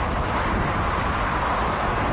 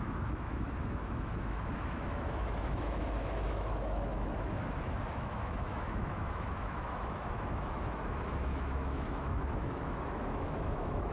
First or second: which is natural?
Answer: first